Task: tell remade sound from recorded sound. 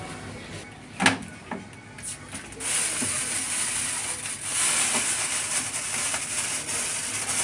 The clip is recorded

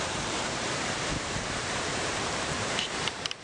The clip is remade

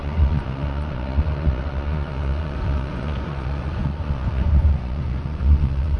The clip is remade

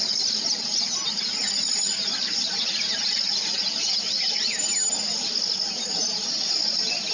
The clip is recorded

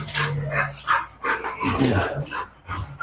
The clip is recorded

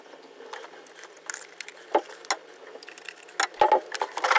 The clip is recorded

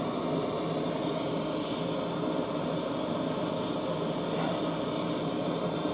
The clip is recorded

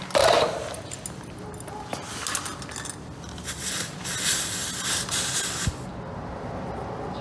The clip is recorded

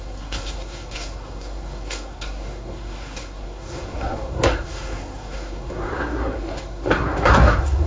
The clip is remade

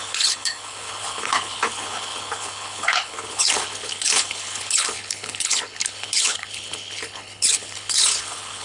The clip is remade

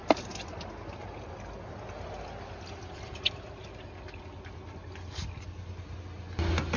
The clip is recorded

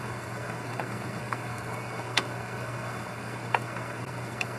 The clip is remade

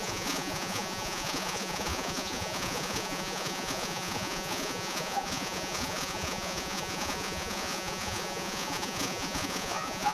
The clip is remade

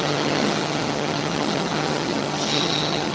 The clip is remade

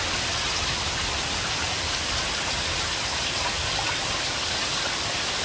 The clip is recorded